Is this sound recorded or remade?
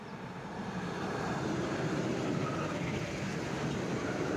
recorded